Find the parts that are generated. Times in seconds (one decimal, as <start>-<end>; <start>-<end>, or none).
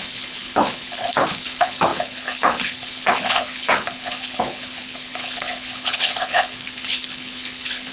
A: 0.0-7.9